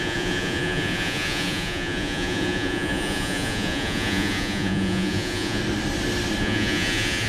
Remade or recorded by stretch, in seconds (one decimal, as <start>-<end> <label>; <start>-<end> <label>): 0.0-5.6 remade; 5.6-6.4 recorded; 6.4-7.3 remade